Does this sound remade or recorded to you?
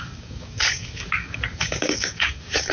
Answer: remade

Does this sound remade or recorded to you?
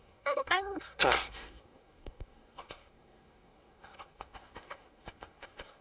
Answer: remade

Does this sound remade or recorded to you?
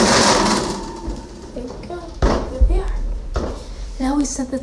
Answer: remade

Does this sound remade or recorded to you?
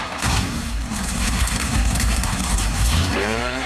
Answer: remade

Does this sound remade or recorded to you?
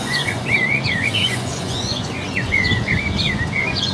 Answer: remade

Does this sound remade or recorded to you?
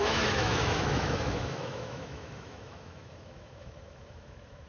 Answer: remade